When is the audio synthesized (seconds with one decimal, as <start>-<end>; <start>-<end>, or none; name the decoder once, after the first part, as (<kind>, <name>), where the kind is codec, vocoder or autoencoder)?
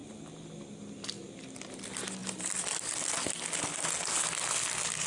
2.2-3.1 (vocoder, BigVGAN v2)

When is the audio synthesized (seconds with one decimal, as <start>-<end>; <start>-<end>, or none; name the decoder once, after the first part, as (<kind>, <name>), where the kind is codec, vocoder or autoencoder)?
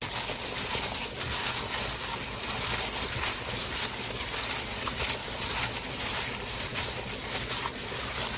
none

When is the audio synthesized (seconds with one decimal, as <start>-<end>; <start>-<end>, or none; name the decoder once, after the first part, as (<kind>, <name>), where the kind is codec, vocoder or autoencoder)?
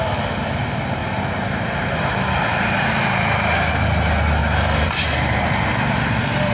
4.4-5.7 (vocoder, BigVGAN v2)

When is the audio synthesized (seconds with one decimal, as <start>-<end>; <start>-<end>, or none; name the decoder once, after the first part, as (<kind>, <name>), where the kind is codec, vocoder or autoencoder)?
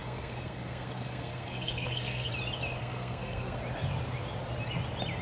0.0-2.3 (codec, SNAC); 2.8-3.6